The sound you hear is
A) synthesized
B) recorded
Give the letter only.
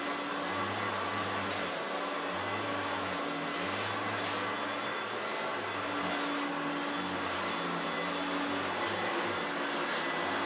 B